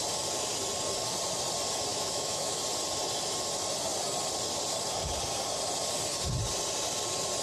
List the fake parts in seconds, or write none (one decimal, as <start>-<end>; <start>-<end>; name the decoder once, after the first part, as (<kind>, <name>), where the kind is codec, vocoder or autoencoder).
1.9-2.6 (autoencoder, DAC-VAE)